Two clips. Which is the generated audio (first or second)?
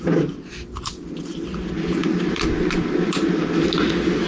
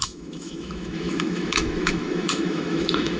second